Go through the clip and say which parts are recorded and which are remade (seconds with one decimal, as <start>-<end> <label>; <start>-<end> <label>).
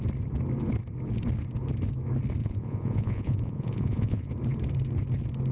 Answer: 0.0-2.4 recorded; 2.4-4.3 remade; 4.3-5.5 recorded